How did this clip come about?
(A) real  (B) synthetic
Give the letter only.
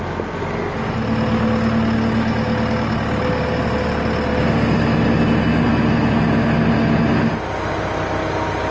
A